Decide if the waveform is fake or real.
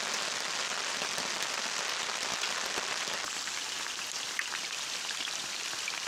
real